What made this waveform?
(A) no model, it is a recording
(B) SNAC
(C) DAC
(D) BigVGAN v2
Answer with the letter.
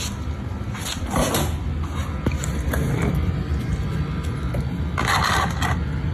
A